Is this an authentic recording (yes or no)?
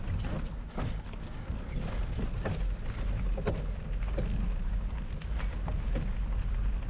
yes